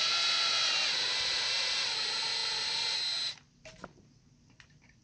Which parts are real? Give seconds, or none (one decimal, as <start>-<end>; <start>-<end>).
0.0-5.0